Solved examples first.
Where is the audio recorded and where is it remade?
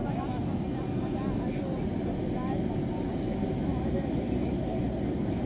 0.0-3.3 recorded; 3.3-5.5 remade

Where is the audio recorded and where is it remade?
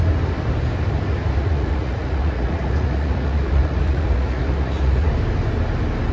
0.0-1.4 recorded; 1.4-5.1 remade; 5.1-6.1 recorded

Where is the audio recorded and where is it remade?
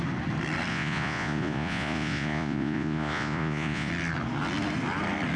0.0-0.7 recorded; 0.7-3.9 remade; 3.9-5.4 recorded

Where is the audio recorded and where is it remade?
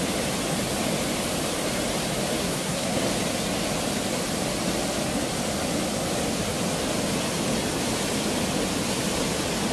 0.0-2.4 recorded; 2.4-3.0 remade; 3.0-9.7 recorded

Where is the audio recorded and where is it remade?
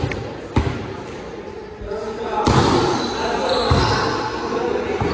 0.0-1.6 recorded; 1.6-3.5 remade; 3.5-5.1 recorded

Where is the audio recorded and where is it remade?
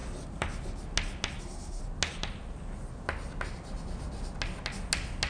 0.0-1.4 recorded; 1.4-1.8 remade; 1.8-5.3 recorded